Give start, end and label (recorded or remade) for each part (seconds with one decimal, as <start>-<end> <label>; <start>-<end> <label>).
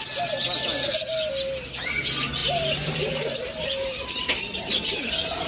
0.0-2.4 recorded; 2.4-4.7 remade; 4.7-5.5 recorded